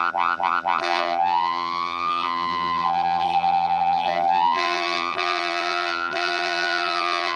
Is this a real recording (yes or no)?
no